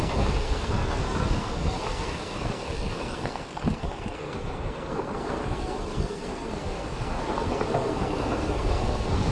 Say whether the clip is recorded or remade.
remade